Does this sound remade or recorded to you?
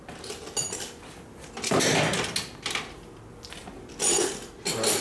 recorded